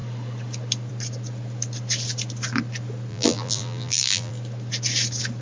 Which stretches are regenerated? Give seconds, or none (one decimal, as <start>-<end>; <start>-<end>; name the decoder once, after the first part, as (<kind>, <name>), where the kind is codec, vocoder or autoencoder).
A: 3.1-4.3 (vocoder, BigVGAN v2)